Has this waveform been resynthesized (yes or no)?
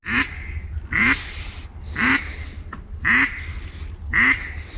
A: no